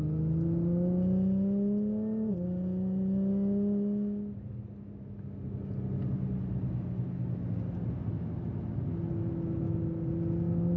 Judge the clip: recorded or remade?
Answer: recorded